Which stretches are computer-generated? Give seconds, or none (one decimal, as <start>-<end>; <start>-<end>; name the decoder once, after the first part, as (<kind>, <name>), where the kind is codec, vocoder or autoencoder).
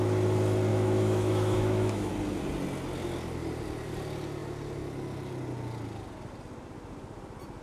0.7-2.1 (autoencoder, DAC-VAE)